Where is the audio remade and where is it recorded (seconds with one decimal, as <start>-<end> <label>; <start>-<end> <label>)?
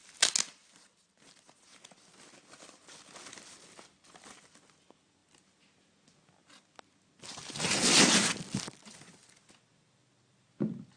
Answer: 0.0-11.0 recorded